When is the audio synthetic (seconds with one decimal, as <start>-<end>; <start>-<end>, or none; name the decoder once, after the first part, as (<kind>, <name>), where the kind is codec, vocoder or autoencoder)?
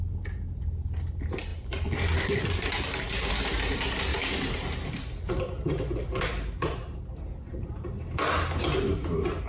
1.5-3.3 (vocoder, BigVGAN v2); 4.1-6.2